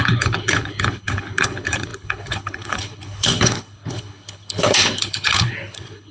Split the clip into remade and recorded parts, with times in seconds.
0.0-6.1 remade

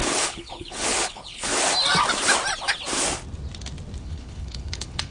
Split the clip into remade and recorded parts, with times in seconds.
0.0-1.5 remade; 1.5-4.0 recorded; 4.0-5.1 remade

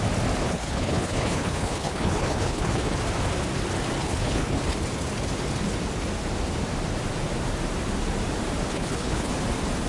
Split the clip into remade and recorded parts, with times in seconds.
0.0-0.4 recorded; 0.4-3.0 remade; 3.0-4.0 recorded; 4.0-4.6 remade; 4.6-8.7 recorded; 8.7-9.3 remade; 9.3-9.9 recorded